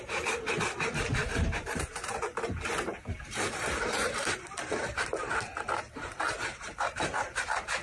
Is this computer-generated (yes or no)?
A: yes